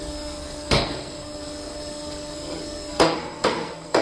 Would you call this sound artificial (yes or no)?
yes